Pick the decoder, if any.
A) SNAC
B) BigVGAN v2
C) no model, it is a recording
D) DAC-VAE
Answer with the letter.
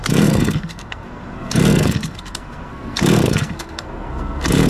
A